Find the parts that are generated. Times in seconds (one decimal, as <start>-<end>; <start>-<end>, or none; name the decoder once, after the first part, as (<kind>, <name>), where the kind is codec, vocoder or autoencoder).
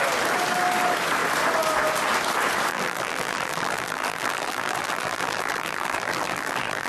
2.7-6.9 (vocoder, BigVGAN v2)